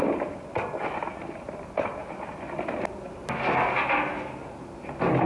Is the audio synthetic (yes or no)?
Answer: no